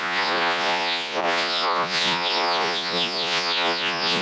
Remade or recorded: remade